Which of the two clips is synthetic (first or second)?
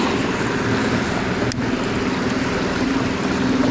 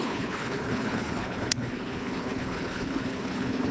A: second